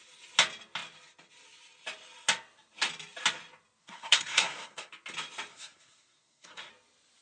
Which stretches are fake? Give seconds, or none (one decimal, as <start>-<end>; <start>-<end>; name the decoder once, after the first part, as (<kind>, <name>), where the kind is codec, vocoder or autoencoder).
3.8-4.9 (codec, SNAC); 5.5-6.7